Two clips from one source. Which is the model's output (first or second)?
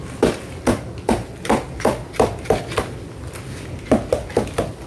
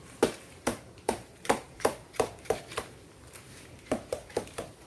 second